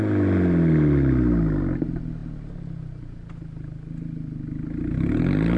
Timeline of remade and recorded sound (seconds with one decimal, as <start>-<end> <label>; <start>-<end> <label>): 0.0-5.6 recorded